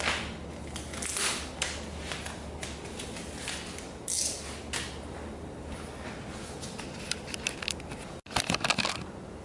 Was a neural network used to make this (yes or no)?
no